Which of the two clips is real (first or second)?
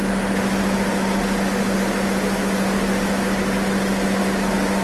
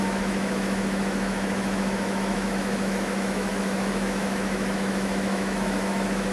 first